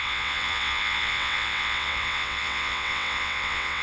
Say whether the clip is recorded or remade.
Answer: remade